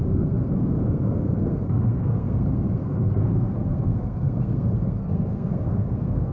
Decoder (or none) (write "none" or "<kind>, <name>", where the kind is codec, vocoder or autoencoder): codec, SNAC